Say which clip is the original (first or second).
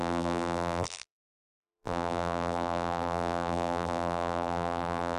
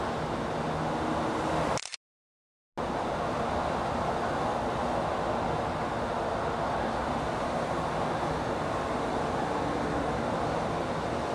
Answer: second